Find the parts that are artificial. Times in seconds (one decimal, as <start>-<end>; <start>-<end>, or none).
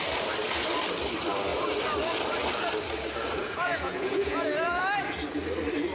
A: 3.4-4.8